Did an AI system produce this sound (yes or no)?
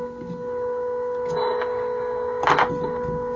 no